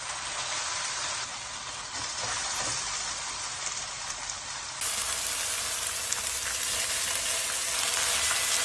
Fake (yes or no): no